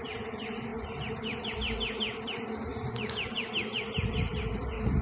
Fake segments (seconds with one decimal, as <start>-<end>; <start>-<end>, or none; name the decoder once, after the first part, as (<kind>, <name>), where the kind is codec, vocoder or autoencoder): 0.7-1.5 (vocoder, BigVGAN v2); 2.7-3.4